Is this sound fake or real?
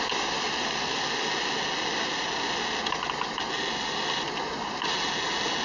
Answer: real